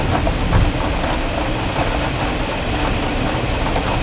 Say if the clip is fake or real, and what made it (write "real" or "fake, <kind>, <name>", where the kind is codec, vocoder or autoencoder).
real